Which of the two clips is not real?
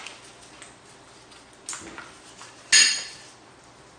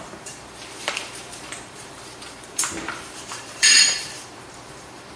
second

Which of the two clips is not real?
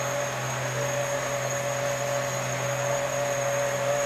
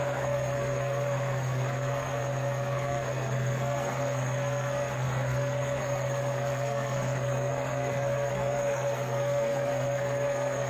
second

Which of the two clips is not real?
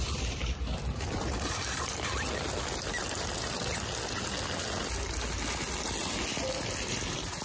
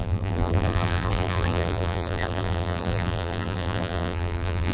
second